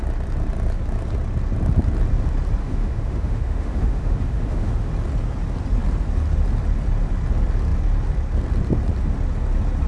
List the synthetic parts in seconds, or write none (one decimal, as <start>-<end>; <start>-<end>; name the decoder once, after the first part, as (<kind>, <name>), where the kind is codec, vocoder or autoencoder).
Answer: 2.6-4.9 (autoencoder, DAC-VAE)